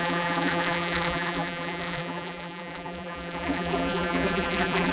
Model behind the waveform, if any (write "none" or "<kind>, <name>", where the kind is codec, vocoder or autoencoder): vocoder, BigVGAN v2